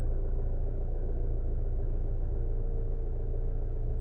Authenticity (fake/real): fake